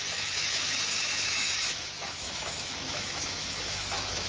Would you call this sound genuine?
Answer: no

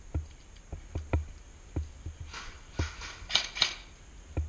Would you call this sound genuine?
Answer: yes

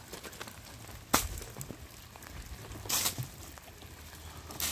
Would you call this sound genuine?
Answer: yes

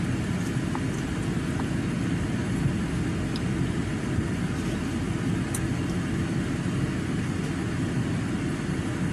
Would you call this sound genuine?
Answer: yes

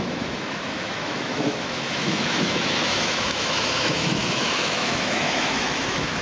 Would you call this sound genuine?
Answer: no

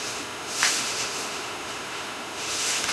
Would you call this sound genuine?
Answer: no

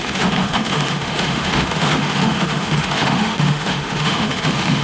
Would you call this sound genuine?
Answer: no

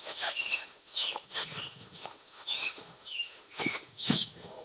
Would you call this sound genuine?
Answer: no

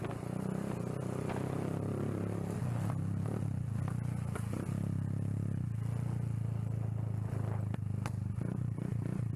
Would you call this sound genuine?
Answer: yes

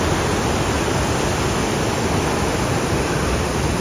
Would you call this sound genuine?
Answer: yes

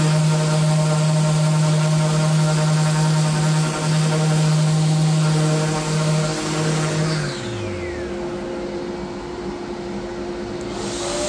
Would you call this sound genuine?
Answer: yes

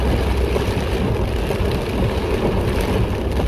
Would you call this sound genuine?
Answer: yes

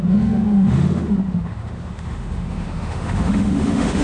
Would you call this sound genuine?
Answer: no